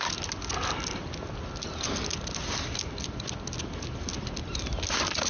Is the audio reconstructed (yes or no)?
no